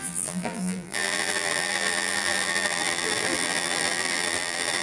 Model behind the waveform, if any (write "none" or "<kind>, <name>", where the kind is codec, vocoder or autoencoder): vocoder, BigVGAN v2